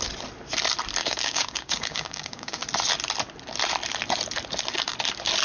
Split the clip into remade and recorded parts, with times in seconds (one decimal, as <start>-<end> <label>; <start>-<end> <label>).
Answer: 0.0-1.0 recorded; 1.0-2.6 remade; 2.6-5.4 recorded